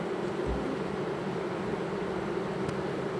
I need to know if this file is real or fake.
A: real